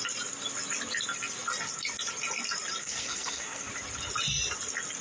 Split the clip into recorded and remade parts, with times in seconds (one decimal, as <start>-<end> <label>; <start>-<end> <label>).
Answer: 0.0-2.8 recorded; 2.8-3.7 remade; 3.7-5.0 recorded